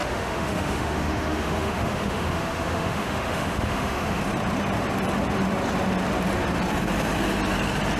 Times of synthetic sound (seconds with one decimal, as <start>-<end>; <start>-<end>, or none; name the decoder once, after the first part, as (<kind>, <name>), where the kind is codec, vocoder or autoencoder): 0.0-4.2 (autoencoder, DAC-VAE)